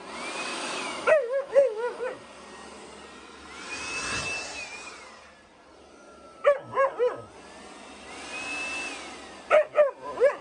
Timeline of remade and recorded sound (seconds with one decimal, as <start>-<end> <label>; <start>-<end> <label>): 0.0-0.5 recorded; 0.5-2.0 remade; 2.0-10.4 recorded